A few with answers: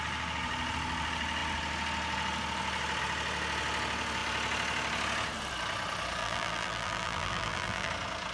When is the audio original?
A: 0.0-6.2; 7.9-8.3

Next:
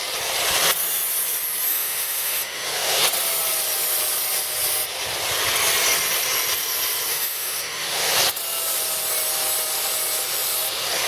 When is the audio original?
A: 0.0-1.7; 3.0-7.1; 8.1-11.1

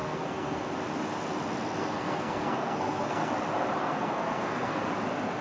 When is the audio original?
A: 0.6-1.8; 3.3-3.8; 4.8-5.4

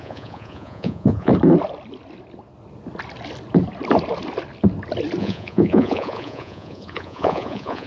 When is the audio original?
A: 1.3-5.2